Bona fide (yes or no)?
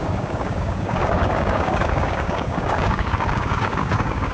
no